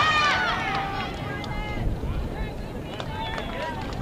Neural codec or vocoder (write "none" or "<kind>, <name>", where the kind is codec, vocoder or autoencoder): none